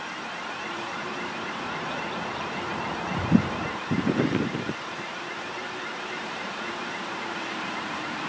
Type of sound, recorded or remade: remade